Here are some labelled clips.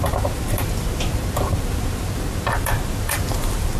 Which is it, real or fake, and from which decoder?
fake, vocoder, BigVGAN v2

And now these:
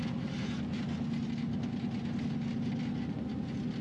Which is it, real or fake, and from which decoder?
real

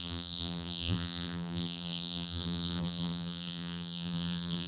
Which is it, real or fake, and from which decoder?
fake, vocoder, BigVGAN v2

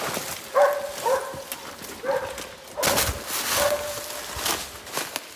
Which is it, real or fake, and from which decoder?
real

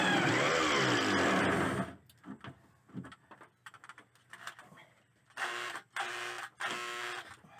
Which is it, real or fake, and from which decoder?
real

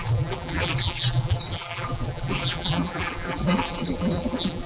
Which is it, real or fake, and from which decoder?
fake, vocoder, BigVGAN v2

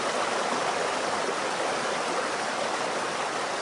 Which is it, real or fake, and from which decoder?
real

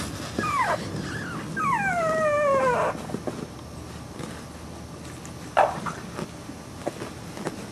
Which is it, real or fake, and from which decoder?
real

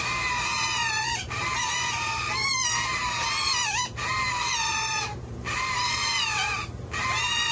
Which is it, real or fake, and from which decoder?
fake, vocoder, BigVGAN v2